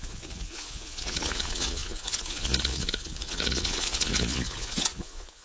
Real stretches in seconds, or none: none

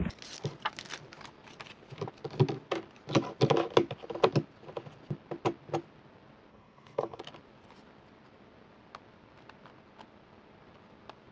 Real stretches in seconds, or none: 0.0-6.5; 7.2-11.3